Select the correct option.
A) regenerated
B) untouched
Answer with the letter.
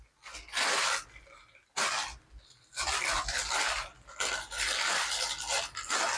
B